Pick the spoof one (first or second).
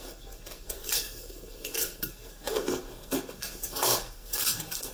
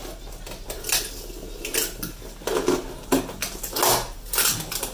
first